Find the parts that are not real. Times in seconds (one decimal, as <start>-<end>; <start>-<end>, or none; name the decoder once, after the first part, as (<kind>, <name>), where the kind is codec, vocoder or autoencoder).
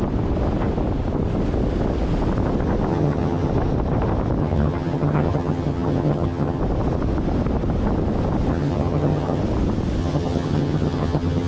2.9-3.5 (vocoder, HiFi-GAN); 4.4-6.6; 8.5-9.4; 10.0-11.5